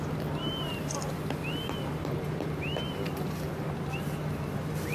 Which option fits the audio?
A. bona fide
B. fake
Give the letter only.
B